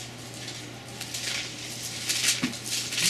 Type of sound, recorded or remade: recorded